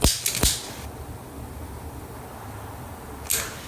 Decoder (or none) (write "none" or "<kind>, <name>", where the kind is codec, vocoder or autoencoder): none